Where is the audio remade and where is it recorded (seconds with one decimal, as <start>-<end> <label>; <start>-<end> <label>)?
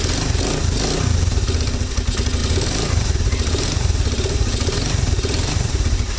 0.0-2.4 recorded; 2.4-6.2 remade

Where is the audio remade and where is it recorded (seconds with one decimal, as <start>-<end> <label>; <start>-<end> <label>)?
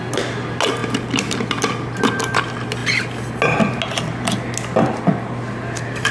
0.0-6.1 recorded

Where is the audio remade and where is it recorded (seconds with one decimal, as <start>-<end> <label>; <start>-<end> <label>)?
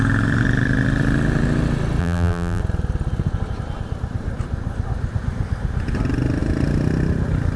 0.0-2.0 recorded; 2.0-2.6 remade; 2.6-7.6 recorded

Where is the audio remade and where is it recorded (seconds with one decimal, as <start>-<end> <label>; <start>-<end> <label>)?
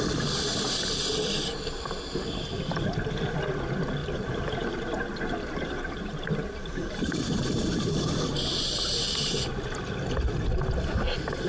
0.0-4.0 recorded; 4.0-9.1 remade; 9.1-11.5 recorded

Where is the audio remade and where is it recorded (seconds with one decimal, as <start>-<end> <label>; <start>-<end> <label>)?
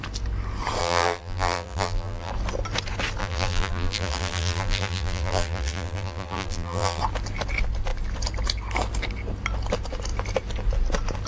0.0-0.8 recorded; 0.8-2.3 remade; 2.3-3.2 recorded; 3.2-7.0 remade; 7.0-11.3 recorded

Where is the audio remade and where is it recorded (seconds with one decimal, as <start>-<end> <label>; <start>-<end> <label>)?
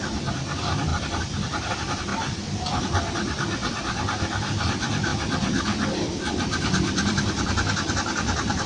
0.0-2.1 remade; 2.1-2.8 recorded; 2.8-8.7 remade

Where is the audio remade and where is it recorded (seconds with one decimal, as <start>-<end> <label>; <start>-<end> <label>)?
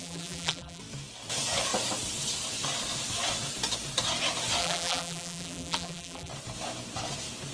0.0-0.8 remade; 0.8-4.6 recorded; 4.6-6.3 remade; 6.3-7.5 recorded